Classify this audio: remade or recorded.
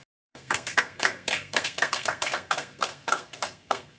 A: remade